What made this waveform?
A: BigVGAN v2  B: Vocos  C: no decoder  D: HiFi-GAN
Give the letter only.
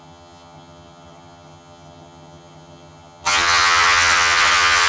D